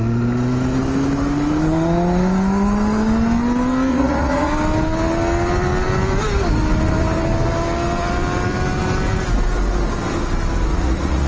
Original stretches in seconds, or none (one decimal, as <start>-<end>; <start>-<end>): 0.0-3.9; 4.5-10.7